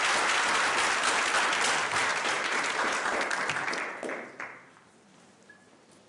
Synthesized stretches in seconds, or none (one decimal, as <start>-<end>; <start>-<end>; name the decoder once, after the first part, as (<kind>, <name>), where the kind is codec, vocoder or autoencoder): 2.1-3.3 (vocoder, BigVGAN v2)